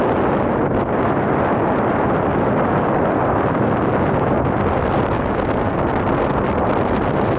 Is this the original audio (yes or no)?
yes